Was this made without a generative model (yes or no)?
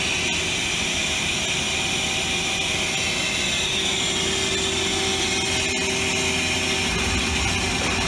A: yes